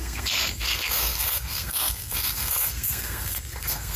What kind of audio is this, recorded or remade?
remade